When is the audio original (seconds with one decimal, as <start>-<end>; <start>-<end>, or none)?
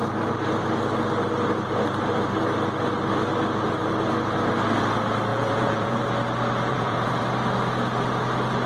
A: 0.0-5.3; 6.0-6.7; 7.2-8.7